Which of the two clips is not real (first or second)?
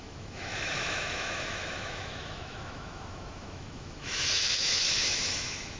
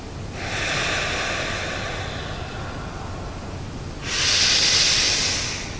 first